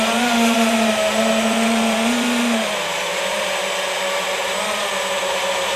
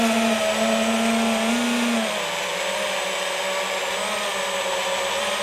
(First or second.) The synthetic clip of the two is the first